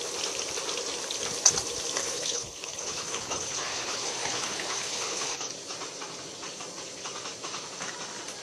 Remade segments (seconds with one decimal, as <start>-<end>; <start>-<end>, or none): 2.0-5.5